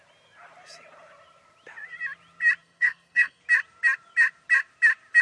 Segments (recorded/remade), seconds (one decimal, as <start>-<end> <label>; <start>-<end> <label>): 0.0-2.6 recorded; 2.6-3.4 remade; 3.4-5.2 recorded